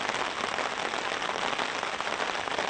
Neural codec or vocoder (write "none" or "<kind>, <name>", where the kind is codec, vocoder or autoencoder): none